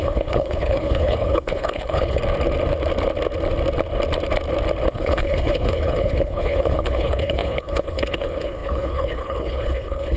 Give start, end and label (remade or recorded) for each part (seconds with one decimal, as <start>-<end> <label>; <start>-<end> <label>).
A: 0.0-2.2 remade; 2.2-4.9 recorded; 4.9-10.2 remade